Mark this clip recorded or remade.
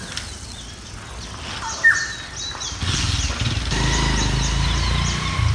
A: recorded